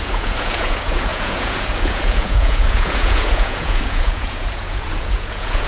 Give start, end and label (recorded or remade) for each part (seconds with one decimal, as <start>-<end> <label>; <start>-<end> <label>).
0.0-5.7 remade